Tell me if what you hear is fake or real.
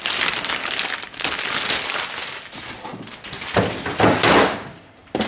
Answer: real